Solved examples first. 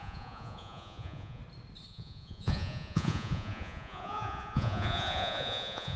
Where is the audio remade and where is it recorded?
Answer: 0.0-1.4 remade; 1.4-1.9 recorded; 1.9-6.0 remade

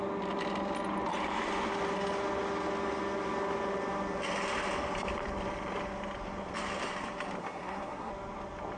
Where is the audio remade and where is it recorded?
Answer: 0.0-7.4 recorded; 7.4-8.1 remade; 8.1-8.8 recorded

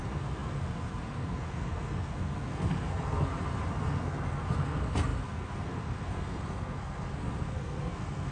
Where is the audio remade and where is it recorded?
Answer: 0.0-3.3 remade; 3.3-3.8 recorded; 3.8-8.3 remade

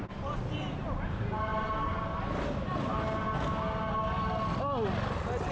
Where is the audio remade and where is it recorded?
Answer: 0.0-5.5 recorded

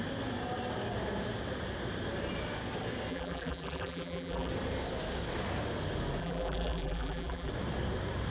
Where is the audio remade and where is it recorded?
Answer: 0.0-3.1 recorded; 3.1-4.5 remade; 4.5-6.2 recorded; 6.2-7.5 remade; 7.5-8.3 recorded

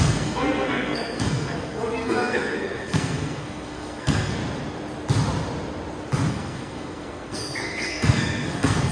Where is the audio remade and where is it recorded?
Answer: 0.0-4.4 remade; 4.4-6.3 recorded; 6.3-8.9 remade

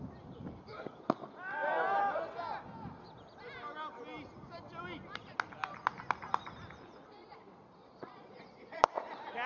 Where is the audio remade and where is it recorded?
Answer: 0.0-7.2 recorded; 7.2-9.1 remade; 9.1-9.5 recorded

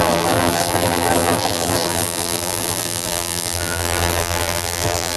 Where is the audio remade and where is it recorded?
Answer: 0.0-5.2 remade